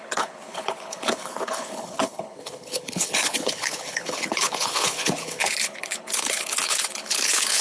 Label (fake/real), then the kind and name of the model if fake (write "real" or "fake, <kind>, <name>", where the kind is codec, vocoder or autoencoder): fake, codec, HILCodec